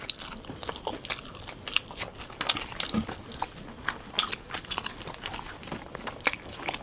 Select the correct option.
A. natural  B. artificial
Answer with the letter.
A